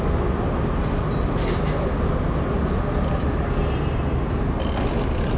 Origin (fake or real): real